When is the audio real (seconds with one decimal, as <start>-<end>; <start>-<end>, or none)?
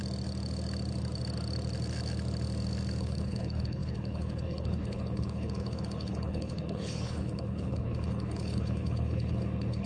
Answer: 0.0-3.0